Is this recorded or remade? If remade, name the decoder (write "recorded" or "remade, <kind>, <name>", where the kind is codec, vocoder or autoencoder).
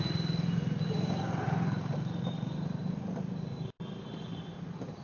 recorded